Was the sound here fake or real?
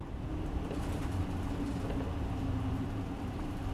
fake